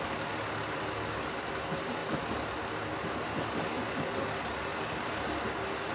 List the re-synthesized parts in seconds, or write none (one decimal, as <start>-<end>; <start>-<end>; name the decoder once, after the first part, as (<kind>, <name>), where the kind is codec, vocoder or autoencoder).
2.0-3.1 (vocoder, BigVGAN v2); 4.7-5.3